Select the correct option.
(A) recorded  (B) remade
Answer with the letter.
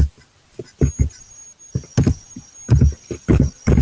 A